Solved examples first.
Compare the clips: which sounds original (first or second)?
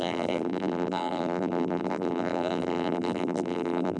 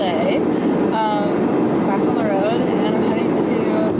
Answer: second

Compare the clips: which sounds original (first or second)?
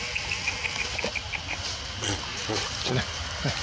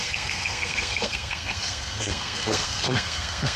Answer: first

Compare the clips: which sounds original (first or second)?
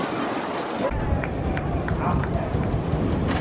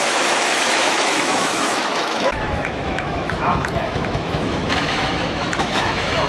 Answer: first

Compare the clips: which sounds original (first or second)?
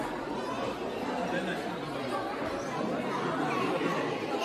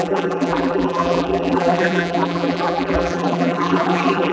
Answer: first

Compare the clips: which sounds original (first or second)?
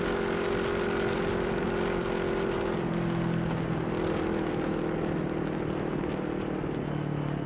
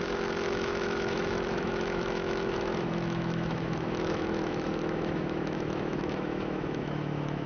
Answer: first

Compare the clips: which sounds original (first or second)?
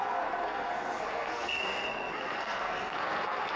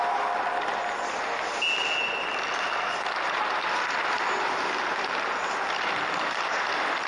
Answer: second